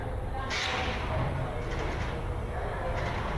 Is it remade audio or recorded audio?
recorded